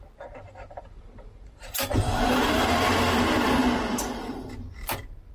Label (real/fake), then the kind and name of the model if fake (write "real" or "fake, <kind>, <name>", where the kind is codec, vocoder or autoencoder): fake, vocoder, BigVGAN v2